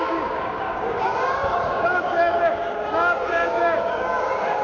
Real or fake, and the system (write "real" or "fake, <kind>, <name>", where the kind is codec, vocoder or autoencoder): fake, codec, DAC